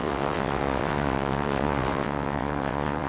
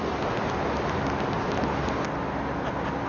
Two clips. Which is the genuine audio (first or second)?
second